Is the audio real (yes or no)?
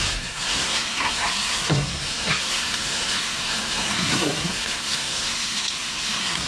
no